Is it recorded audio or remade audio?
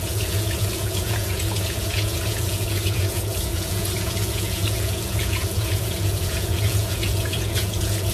remade